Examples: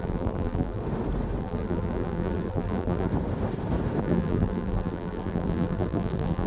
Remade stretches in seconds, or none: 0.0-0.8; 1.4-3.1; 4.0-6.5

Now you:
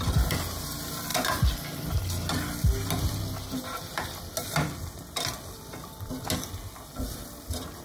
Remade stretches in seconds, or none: none

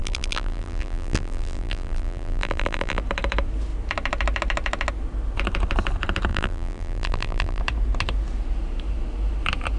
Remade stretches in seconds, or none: 0.0-3.0; 6.3-7.6

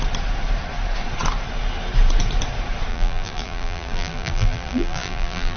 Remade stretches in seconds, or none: 2.9-5.6

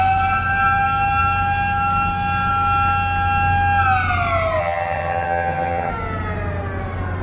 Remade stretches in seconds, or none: 4.6-5.9

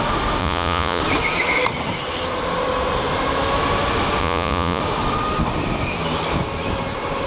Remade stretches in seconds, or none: 0.4-1.0; 4.2-4.8

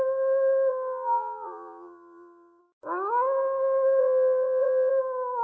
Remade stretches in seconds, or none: 0.7-2.6; 4.0-4.9

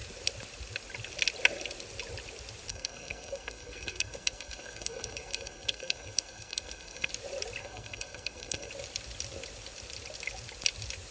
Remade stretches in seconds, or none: 2.7-7.1; 7.6-8.7